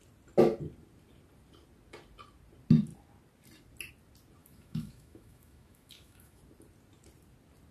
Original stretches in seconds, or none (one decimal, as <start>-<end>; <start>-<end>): 0.0-4.4; 6.4-7.7